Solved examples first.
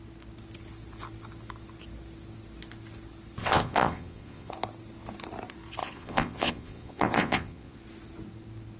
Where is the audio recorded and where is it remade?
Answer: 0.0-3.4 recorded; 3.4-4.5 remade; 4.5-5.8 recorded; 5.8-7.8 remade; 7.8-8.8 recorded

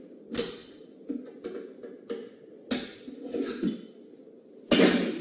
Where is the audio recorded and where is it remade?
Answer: 0.0-5.2 recorded

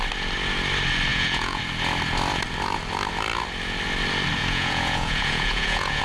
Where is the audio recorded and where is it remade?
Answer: 0.0-1.1 recorded; 1.1-1.6 remade; 1.6-4.4 recorded; 4.4-6.0 remade

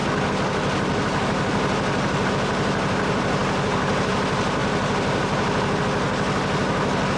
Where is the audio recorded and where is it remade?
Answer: 0.0-7.2 recorded

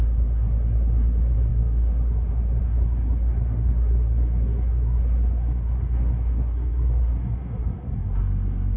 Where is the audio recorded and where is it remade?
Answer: 0.0-8.8 remade

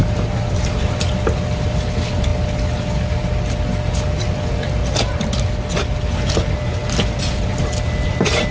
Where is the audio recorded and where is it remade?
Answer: 0.0-8.5 recorded

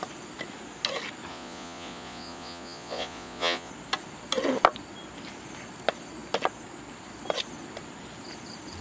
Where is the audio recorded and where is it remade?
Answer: 0.0-1.3 recorded; 1.3-3.7 remade; 3.7-8.8 recorded